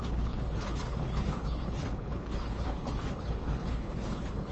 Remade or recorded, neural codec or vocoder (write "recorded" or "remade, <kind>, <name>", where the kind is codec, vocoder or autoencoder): remade, codec, HILCodec